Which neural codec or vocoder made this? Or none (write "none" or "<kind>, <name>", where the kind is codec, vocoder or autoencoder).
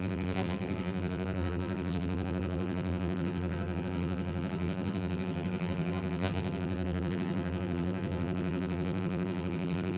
vocoder, BigVGAN v2